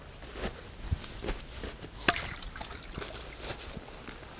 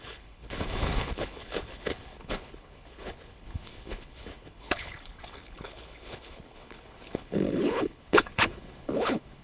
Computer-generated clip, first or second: second